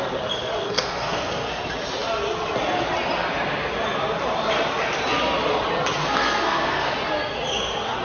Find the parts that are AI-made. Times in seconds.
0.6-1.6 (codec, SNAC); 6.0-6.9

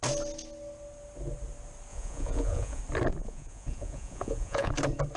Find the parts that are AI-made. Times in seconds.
1.9-2.8 (vocoder, Vocos); 3.2-4.7

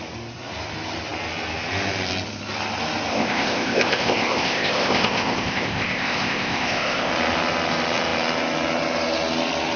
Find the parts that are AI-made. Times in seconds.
3.1-7.1 (codec, ZipCodec)

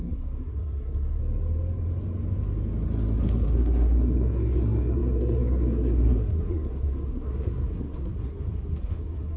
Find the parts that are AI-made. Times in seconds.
0.0-1.2 (codec, SNAC); 3.2-9.4

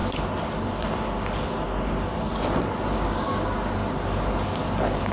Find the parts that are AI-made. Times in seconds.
none

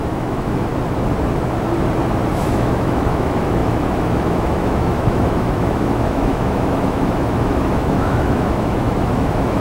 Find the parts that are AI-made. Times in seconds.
0.0-0.7 (autoencoder, DAC-VAE); 2.3-9.6